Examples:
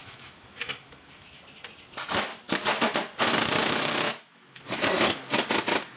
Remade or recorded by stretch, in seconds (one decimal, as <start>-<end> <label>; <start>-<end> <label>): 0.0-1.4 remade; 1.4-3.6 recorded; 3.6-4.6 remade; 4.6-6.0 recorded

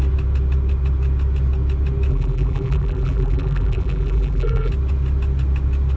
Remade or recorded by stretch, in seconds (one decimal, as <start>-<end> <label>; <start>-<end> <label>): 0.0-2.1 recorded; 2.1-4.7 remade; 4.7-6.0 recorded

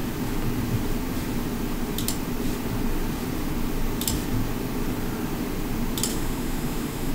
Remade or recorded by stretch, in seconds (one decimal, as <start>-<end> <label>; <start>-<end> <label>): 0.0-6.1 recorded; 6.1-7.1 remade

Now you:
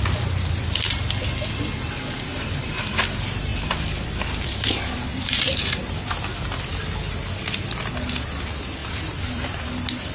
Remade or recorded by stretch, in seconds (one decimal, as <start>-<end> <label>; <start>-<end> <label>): 0.0-2.3 recorded; 2.3-3.0 remade; 3.0-3.5 recorded; 3.5-4.2 remade; 4.2-5.1 recorded; 5.1-6.8 remade; 6.8-8.8 recorded; 8.8-10.1 remade